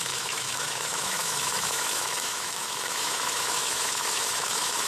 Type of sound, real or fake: fake